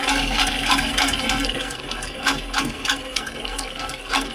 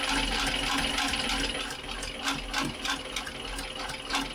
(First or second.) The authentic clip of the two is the second